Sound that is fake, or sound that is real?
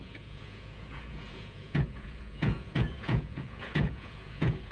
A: fake